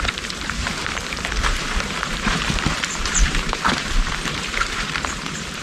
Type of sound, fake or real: fake